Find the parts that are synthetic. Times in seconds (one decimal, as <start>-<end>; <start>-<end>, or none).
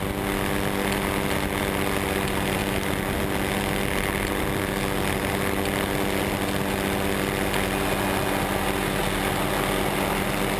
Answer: none